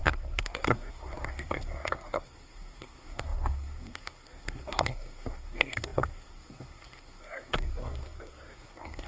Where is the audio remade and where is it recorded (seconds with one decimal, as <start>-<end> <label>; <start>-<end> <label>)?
0.0-9.1 remade